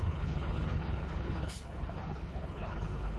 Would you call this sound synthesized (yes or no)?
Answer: yes